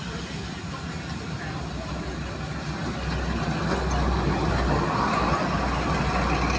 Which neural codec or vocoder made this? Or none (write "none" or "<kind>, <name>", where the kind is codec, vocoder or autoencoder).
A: none